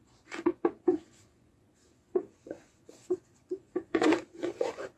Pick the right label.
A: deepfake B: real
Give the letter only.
A